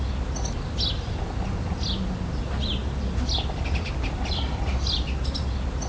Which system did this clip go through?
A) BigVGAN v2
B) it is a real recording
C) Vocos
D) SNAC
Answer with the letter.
B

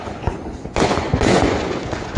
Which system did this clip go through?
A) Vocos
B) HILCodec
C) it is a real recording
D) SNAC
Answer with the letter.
A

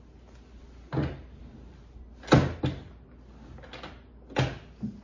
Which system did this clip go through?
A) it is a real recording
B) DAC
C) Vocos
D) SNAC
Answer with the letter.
A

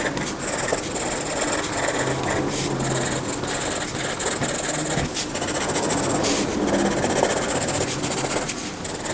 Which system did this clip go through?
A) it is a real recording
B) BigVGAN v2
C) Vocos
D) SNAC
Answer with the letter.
A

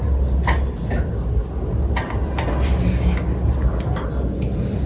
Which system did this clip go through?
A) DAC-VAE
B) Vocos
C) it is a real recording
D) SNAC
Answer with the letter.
C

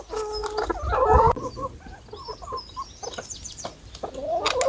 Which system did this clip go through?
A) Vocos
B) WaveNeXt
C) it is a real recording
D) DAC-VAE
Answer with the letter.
C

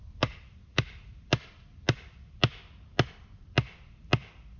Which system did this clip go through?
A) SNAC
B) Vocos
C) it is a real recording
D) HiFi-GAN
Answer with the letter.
C